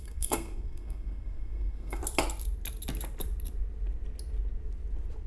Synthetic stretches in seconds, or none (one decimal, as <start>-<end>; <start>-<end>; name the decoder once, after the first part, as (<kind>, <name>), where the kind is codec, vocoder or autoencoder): 0.0-2.0 (codec, SNAC)